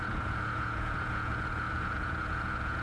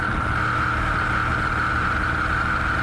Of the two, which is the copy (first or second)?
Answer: first